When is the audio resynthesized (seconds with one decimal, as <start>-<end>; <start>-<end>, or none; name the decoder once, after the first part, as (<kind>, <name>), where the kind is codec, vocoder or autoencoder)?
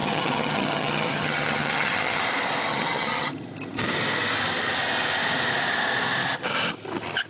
0.0-2.2 (vocoder, HiFi-GAN); 2.7-3.3